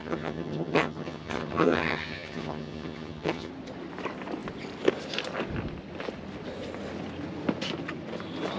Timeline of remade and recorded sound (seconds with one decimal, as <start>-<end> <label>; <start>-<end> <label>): 0.0-3.5 remade; 3.5-8.6 recorded